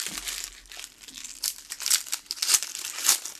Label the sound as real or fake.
real